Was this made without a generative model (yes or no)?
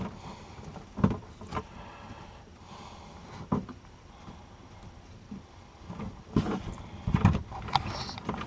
yes